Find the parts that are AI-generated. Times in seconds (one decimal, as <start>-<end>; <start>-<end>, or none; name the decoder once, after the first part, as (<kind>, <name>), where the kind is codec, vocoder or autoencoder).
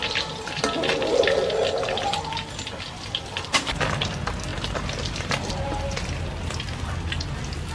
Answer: none